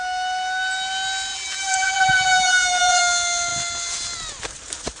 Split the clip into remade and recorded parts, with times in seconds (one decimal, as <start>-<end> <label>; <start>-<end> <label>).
0.0-1.3 recorded; 1.3-3.0 remade; 3.0-5.0 recorded